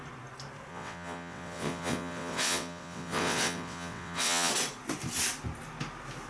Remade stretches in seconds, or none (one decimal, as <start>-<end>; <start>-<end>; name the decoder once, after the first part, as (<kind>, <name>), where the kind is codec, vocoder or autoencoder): 0.7-4.5 (vocoder, WaveNeXt)